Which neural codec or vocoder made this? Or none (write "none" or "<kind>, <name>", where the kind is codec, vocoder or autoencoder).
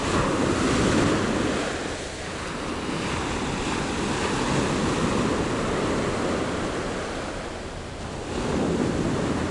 none